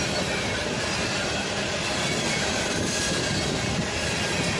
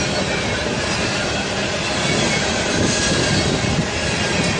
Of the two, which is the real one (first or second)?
second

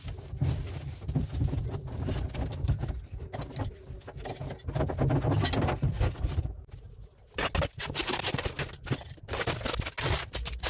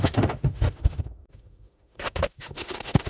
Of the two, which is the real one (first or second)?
first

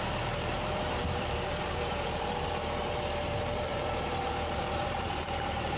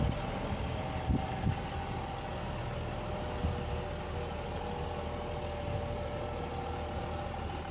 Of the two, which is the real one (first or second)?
second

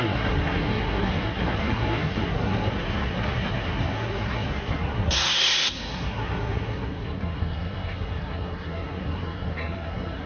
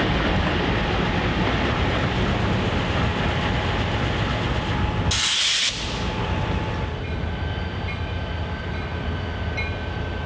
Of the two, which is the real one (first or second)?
second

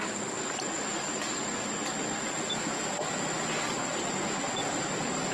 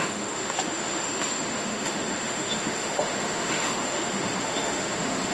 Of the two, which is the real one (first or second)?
first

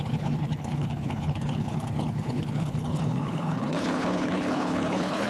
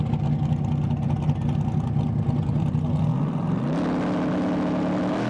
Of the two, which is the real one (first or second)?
second